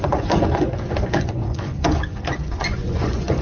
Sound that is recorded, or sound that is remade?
remade